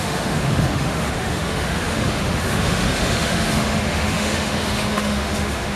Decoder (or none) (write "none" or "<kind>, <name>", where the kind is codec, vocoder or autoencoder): autoencoder, DAC-VAE